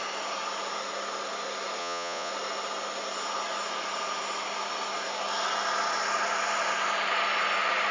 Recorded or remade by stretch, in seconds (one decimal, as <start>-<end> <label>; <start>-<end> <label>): 0.0-1.8 recorded; 1.8-2.3 remade; 2.3-7.9 recorded